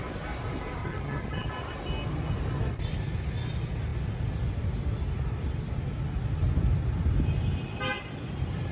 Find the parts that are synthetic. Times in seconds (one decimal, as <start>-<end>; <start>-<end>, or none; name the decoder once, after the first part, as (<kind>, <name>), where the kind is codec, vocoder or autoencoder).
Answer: 0.8-1.5 (vocoder, HiFi-GAN)